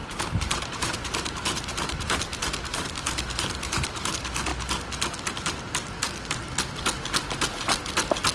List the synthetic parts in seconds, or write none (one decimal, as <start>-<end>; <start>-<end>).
0.0-4.1